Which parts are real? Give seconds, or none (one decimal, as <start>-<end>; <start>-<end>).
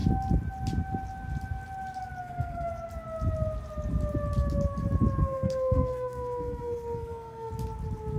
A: 0.0-2.2; 2.7-5.2; 7.5-8.2